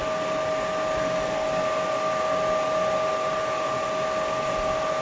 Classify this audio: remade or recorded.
recorded